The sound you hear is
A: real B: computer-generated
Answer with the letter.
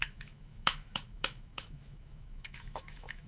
B